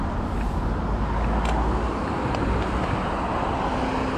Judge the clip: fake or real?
real